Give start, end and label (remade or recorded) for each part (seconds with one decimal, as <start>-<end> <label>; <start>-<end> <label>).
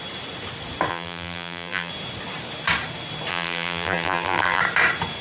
0.0-0.9 recorded; 0.9-1.9 remade; 1.9-3.3 recorded; 3.3-4.6 remade; 4.6-5.2 recorded